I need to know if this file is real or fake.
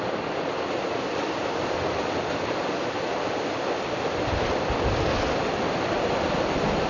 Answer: real